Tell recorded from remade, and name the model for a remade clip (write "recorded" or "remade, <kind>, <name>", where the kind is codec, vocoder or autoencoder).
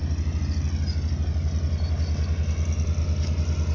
recorded